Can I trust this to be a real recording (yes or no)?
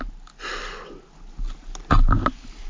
yes